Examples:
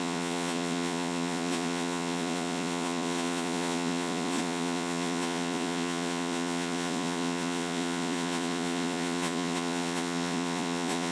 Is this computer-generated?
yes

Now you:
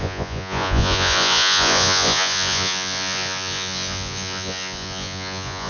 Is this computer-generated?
yes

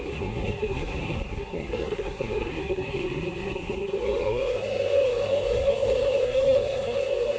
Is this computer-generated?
yes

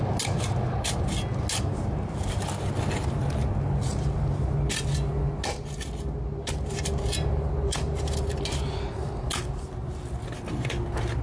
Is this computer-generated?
no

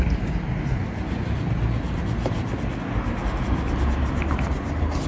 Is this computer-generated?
no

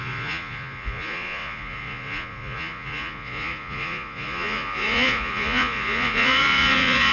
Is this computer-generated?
yes